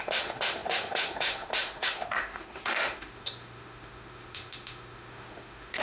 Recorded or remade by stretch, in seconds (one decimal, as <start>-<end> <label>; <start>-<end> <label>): 0.0-5.8 remade